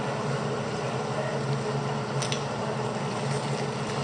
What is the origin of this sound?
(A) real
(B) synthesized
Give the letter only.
A